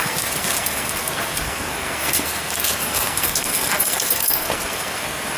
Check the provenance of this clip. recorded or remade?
remade